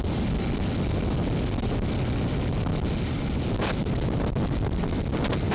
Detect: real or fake real